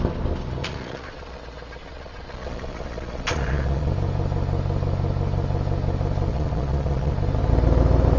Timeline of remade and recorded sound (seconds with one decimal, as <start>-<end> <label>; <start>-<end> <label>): 0.0-0.6 recorded; 0.6-1.4 remade; 1.4-1.8 recorded; 1.8-3.9 remade; 3.9-6.3 recorded; 6.3-7.1 remade; 7.1-8.2 recorded